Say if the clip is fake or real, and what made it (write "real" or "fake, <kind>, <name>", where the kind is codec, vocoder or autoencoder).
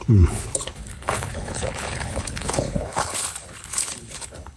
fake, codec, HILCodec